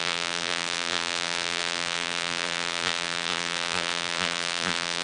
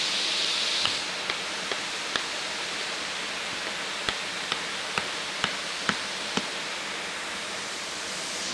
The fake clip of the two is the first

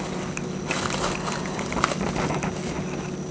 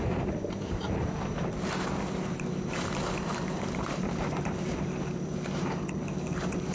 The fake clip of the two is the second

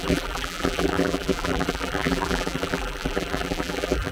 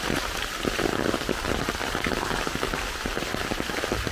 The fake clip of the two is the first